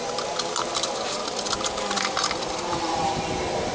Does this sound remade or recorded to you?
recorded